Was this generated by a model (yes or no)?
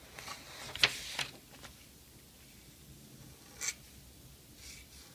no